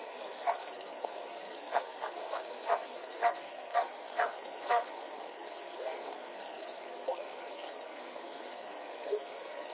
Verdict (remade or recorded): remade